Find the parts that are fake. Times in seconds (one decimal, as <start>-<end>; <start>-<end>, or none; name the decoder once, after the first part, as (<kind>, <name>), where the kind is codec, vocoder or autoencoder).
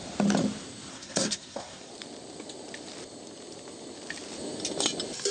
0.9-1.9 (codec, SNAC)